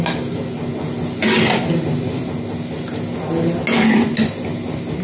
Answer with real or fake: real